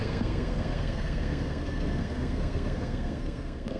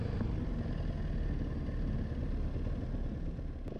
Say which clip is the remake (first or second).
first